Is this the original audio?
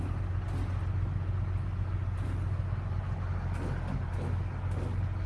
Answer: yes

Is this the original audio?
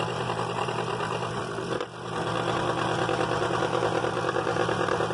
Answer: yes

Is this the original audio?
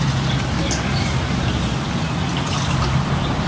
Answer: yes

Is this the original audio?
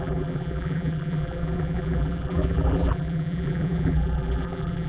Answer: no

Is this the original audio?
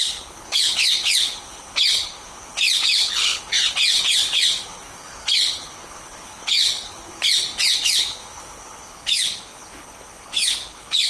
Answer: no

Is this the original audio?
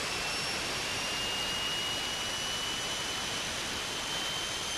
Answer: yes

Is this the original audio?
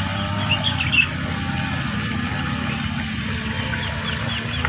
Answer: yes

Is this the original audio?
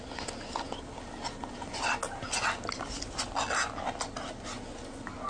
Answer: yes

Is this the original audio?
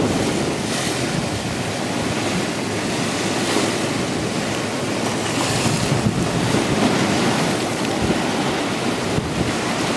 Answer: yes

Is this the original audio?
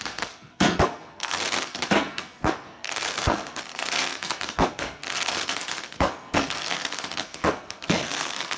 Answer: no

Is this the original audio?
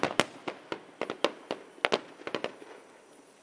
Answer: yes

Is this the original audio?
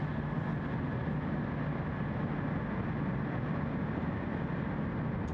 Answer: yes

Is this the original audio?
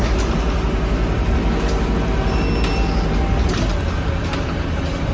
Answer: yes